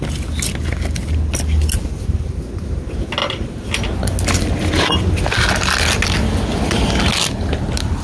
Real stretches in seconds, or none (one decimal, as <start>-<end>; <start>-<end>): 0.0-8.0

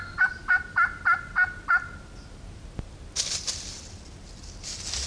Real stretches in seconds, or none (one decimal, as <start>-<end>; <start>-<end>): 0.0-5.1

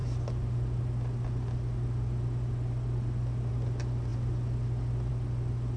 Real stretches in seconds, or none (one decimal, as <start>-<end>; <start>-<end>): 0.0-5.8

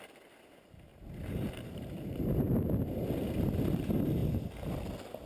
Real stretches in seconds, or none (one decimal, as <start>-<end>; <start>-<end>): 0.0-0.9; 3.3-5.3

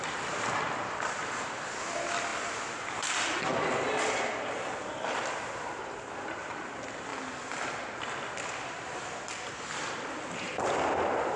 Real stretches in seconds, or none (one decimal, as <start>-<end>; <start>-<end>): 2.3-5.7

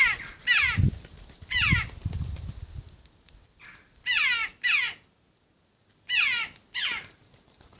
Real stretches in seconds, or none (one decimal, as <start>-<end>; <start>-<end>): 0.0-6.9